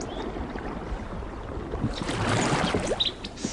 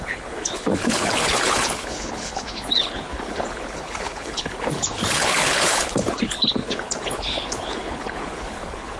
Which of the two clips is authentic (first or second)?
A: first